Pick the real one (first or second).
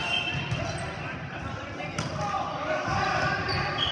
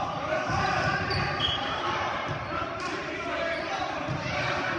first